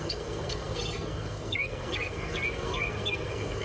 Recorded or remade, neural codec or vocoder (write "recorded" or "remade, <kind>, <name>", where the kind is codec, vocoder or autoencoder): remade, codec, SNAC